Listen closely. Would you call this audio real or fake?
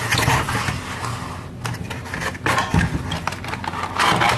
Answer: real